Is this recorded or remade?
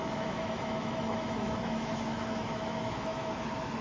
remade